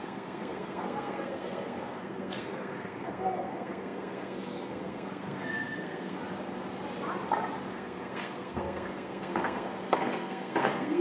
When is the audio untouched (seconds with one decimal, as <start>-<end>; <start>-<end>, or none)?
6.2-7.7